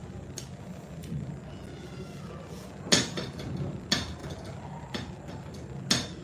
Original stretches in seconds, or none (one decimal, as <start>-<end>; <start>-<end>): 0.0-6.2